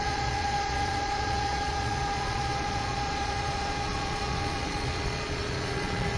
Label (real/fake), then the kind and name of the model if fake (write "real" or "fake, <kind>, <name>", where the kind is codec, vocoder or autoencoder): fake, vocoder, Vocos